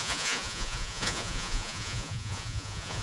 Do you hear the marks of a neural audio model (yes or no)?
yes